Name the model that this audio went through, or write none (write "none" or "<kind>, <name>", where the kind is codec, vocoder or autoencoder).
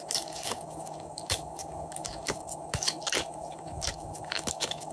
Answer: codec, DAC